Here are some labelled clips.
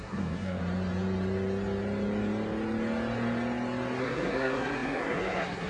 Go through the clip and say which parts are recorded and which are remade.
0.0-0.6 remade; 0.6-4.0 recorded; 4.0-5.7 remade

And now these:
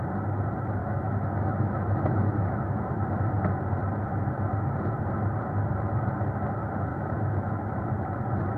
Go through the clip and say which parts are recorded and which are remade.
0.0-0.8 recorded; 0.8-2.9 remade; 2.9-6.9 recorded; 6.9-7.8 remade; 7.8-8.6 recorded

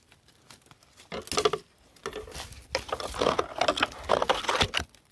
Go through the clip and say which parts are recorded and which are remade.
0.0-5.1 recorded

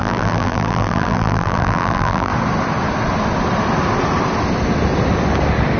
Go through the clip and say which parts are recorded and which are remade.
0.0-2.3 remade; 2.3-5.8 recorded

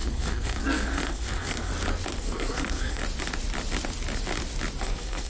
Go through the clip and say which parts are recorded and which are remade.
0.0-1.7 remade; 1.7-2.2 recorded; 2.2-3.0 remade; 3.0-4.8 recorded; 4.8-5.3 remade

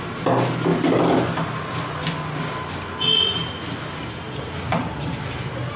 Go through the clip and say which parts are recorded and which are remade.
0.0-5.8 recorded